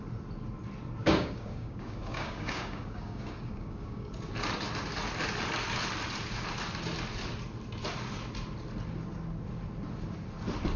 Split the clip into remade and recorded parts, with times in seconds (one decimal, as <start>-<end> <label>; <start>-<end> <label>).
0.0-1.0 recorded; 1.0-4.1 remade; 4.1-10.8 recorded